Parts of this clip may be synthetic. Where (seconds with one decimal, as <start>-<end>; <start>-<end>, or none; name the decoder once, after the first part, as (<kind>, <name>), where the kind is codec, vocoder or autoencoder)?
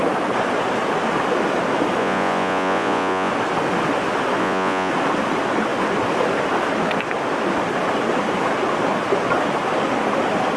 2.0-3.3 (vocoder, Vocos); 4.4-4.9